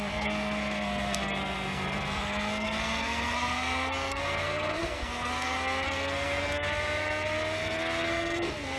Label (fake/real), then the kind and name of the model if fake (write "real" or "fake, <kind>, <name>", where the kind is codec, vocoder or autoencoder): fake, codec, SNAC